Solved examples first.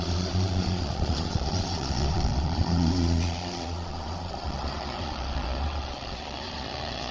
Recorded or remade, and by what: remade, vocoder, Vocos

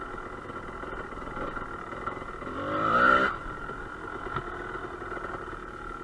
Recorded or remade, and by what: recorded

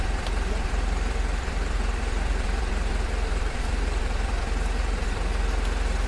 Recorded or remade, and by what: remade, vocoder, BigVGAN v2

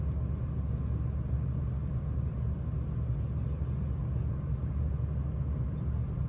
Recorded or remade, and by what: recorded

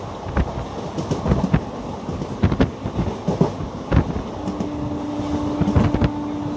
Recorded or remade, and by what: recorded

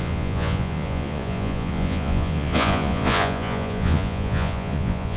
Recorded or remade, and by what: remade, vocoder, Vocos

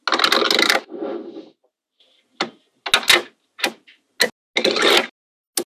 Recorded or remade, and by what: recorded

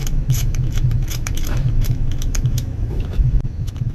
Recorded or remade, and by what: remade, autoencoder, DAC-VAE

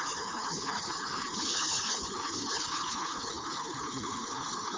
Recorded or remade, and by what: remade, codec, HILCodec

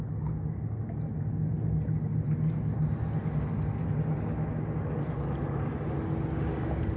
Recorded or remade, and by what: recorded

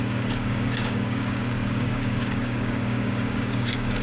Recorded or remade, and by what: remade, codec, DAC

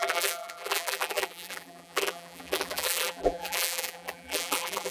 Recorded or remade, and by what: remade, vocoder, BigVGAN v2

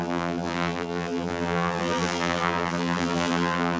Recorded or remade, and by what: remade, vocoder, BigVGAN v2